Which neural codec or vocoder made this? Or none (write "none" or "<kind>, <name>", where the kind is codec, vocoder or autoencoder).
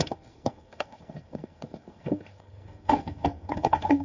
codec, SNAC